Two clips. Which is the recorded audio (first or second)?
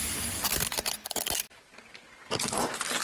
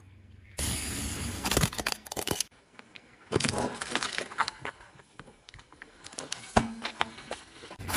first